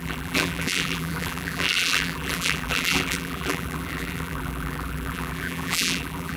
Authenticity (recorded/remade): remade